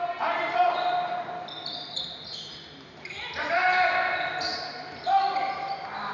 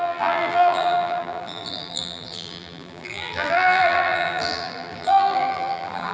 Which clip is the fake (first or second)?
second